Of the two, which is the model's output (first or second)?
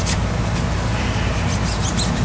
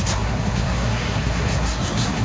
second